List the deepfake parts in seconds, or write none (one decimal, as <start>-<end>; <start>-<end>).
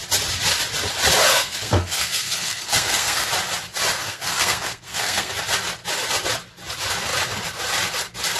1.3-3.3; 4.0-5.3